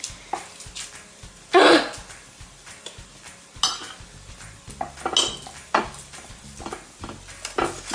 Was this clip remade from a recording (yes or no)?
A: no